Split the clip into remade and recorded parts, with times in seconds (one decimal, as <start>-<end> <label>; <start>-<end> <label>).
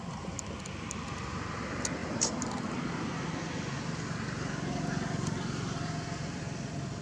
0.0-2.0 recorded; 2.0-2.5 remade; 2.5-7.0 recorded